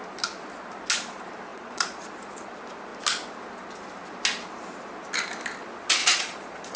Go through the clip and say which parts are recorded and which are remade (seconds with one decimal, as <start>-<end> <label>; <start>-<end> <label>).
0.0-1.5 recorded; 1.5-2.1 remade; 2.1-6.0 recorded; 6.0-6.8 remade